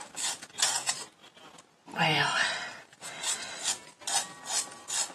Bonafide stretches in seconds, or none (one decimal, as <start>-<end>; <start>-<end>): 0.0-5.1